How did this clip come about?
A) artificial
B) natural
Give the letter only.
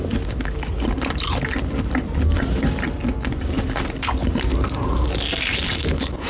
B